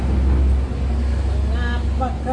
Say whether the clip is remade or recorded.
recorded